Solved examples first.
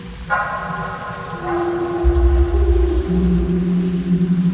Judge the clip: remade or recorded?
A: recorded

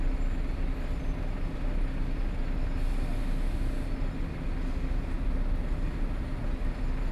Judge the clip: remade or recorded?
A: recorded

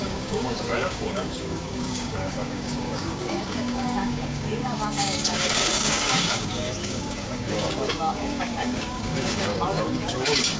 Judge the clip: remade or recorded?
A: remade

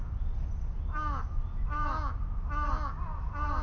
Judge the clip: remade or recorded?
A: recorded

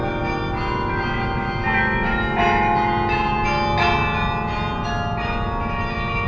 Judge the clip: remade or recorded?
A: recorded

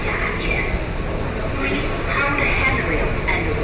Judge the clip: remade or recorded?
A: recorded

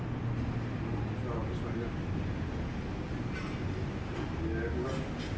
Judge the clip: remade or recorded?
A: recorded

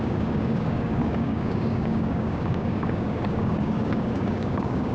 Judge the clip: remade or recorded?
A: remade